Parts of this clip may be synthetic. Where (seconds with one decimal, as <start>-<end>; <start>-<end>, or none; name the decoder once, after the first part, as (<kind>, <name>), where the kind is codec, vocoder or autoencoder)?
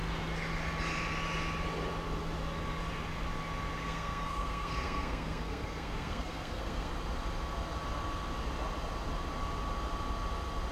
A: 3.8-6.9 (codec, SNAC)